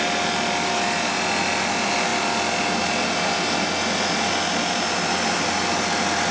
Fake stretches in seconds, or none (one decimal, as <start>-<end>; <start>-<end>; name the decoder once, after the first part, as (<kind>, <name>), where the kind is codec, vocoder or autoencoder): none